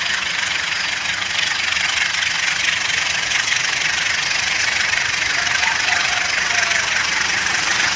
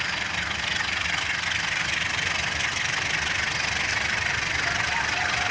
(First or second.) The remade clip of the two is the first